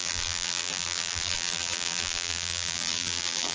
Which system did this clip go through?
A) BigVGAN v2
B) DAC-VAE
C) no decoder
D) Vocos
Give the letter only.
A